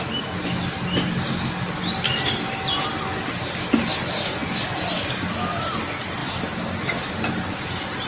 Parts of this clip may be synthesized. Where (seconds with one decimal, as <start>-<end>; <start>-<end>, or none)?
none